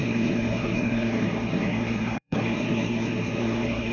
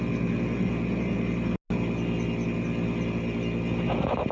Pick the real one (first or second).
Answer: second